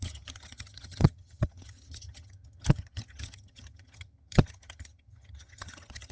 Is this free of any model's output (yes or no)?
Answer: no